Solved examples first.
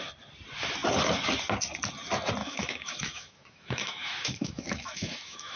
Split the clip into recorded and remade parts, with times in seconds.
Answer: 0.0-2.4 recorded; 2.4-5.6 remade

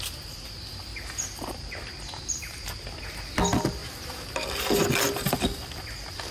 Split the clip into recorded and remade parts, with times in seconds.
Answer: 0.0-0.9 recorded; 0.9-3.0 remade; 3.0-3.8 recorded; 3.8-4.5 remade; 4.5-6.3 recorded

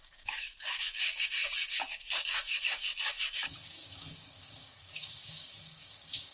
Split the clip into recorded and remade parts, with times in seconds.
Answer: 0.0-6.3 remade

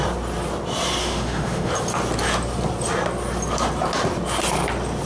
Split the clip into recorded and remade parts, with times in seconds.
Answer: 0.0-1.0 recorded; 1.0-1.7 remade; 1.7-5.1 recorded

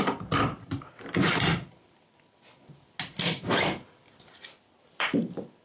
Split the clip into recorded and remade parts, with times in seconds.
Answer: 0.0-5.6 recorded